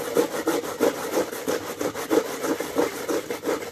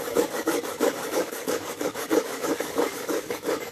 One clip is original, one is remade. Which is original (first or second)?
first